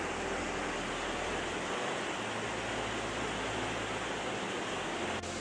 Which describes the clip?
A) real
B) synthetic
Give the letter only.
A